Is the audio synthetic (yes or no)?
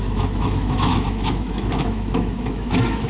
yes